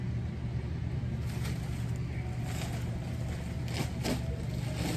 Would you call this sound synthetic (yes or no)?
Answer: no